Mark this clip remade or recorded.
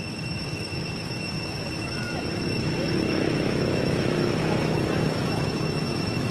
remade